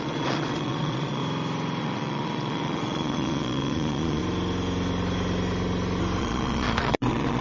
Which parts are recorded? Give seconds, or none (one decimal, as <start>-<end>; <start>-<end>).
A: 1.2-1.8; 4.2-6.2